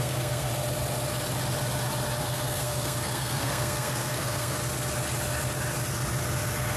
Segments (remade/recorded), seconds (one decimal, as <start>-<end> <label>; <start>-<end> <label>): 0.0-0.5 remade; 0.5-2.2 recorded; 2.2-4.6 remade; 4.6-6.8 recorded